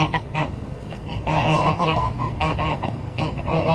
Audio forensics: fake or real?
fake